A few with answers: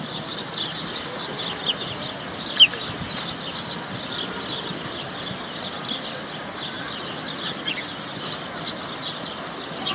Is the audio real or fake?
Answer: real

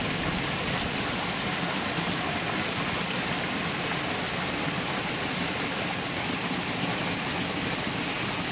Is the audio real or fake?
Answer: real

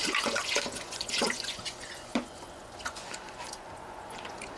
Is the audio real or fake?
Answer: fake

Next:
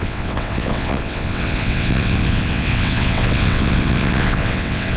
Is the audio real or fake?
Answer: fake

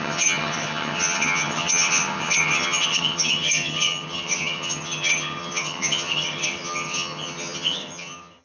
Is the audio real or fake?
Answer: fake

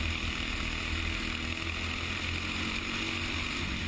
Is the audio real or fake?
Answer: real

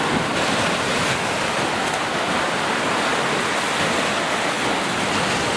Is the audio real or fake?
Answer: real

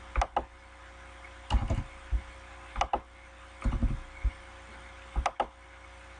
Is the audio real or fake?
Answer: real